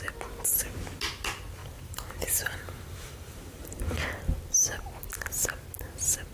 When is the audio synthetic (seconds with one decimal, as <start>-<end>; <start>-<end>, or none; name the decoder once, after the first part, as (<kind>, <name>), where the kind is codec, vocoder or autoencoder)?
1.6-4.2 (vocoder, BigVGAN v2)